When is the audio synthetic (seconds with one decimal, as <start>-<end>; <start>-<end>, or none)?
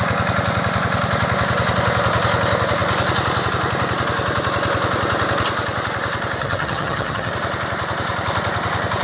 6.4-7.3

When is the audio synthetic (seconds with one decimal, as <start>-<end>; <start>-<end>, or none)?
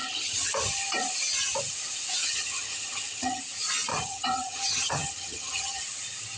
0.0-0.5; 2.2-3.4; 3.9-5.8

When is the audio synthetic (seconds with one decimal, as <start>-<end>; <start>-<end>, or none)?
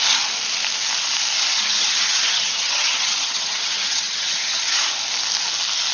1.5-4.8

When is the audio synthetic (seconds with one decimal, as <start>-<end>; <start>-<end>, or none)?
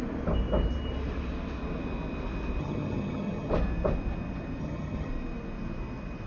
2.6-3.5; 4.6-5.1